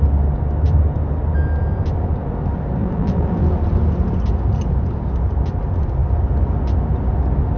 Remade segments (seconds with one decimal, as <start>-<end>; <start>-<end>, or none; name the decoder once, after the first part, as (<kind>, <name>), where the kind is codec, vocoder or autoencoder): 2.8-3.5 (vocoder, BigVGAN v2)